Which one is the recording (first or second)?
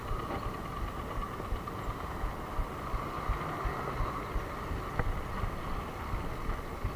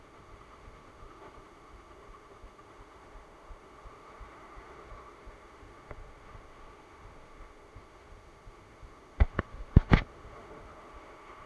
first